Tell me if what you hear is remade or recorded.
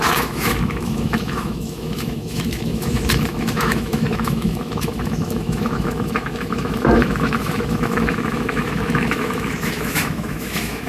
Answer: remade